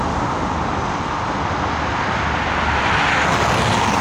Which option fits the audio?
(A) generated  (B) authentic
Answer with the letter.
B